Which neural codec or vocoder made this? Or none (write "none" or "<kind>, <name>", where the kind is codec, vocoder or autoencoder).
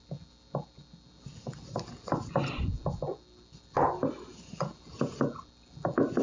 none